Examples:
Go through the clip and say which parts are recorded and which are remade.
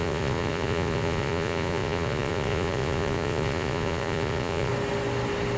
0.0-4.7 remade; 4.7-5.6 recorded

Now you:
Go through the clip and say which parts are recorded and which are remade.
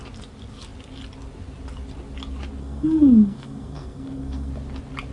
0.0-2.6 recorded; 2.6-4.5 remade; 4.5-5.1 recorded